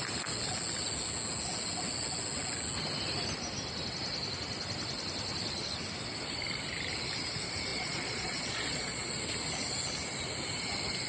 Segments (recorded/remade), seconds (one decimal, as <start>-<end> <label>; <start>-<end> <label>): 0.0-7.7 recorded; 7.7-9.2 remade; 9.2-11.1 recorded